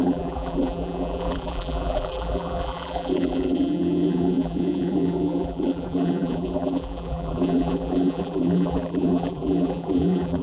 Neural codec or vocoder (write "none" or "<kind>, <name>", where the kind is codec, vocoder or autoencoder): vocoder, BigVGAN v2